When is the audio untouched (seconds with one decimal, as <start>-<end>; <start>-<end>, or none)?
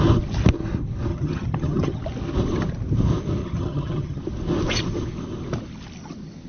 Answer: 0.0-1.1; 2.0-3.4; 4.2-6.5